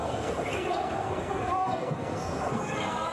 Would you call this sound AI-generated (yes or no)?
yes